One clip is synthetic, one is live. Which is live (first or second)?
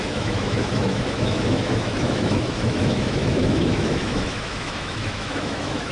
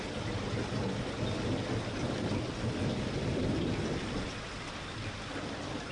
second